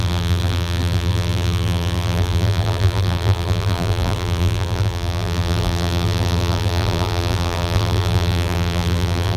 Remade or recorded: remade